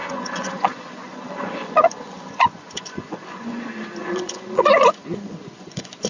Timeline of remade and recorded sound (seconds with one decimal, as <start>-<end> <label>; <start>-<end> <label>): 0.0-3.6 remade; 3.6-4.0 recorded; 4.0-6.1 remade